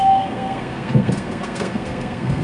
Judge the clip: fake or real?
fake